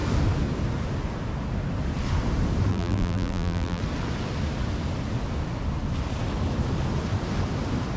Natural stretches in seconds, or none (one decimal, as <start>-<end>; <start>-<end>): 0.0-2.7; 3.8-8.0